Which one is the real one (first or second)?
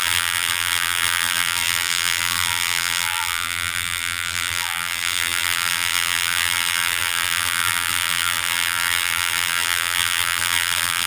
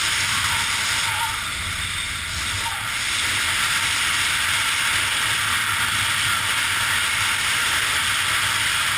second